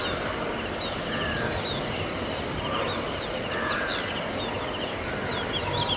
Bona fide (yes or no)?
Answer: yes